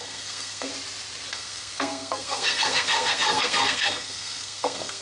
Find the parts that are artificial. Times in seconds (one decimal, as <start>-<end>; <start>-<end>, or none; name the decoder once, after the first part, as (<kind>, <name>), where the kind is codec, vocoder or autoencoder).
0.0-0.7 (codec, SNAC); 1.3-5.0